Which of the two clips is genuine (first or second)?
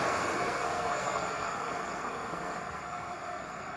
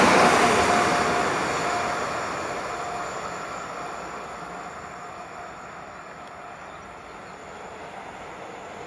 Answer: second